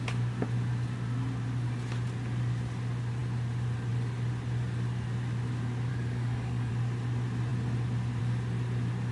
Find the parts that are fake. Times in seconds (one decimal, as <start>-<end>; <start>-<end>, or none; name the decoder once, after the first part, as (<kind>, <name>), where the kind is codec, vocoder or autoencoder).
5.9-6.7 (codec, DAC)

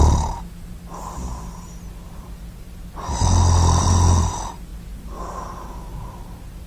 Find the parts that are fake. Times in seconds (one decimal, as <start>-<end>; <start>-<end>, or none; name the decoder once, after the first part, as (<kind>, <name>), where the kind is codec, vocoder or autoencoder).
none